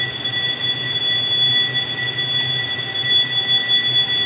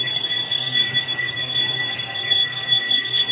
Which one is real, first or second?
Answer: first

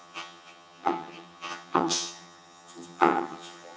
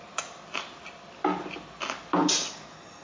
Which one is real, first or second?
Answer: second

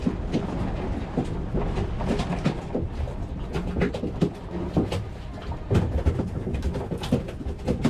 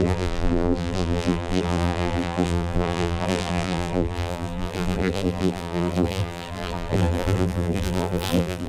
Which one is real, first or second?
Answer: first